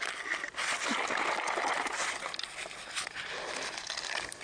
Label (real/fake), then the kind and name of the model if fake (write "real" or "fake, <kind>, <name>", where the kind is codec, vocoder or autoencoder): real